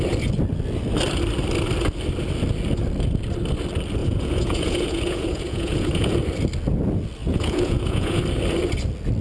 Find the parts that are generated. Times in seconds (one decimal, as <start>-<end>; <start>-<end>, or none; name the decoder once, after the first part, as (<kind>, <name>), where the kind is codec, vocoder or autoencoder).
4.0-6.1 (vocoder, Vocos); 7.2-8.2